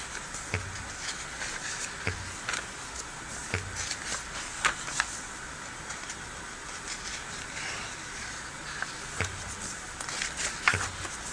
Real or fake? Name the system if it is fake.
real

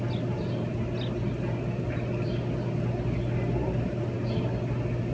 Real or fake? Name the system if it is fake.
real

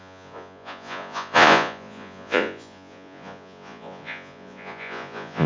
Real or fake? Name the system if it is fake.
fake, vocoder, Vocos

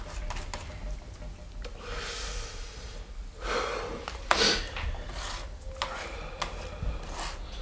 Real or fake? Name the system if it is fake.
real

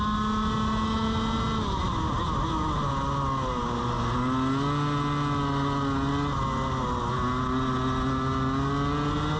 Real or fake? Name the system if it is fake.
real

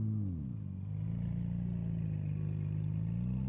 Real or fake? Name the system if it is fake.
real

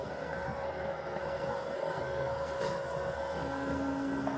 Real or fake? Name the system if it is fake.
fake, codec, SNAC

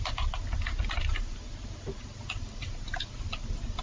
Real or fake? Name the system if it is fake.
real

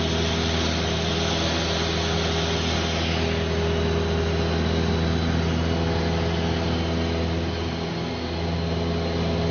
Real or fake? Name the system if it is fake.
real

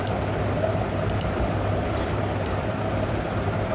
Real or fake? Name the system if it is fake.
fake, vocoder, BigVGAN v2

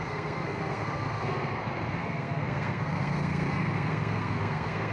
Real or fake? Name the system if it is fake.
fake, codec, SNAC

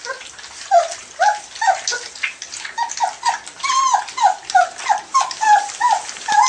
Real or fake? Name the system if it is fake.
real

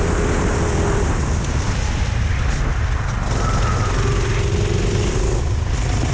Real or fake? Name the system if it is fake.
real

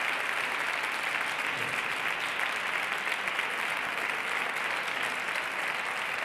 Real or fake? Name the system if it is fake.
real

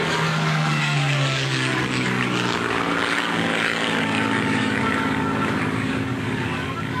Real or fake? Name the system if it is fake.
fake, codec, DAC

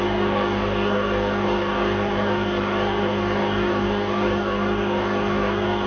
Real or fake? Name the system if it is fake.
fake, codec, DAC